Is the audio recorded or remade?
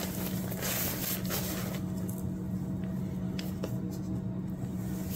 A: recorded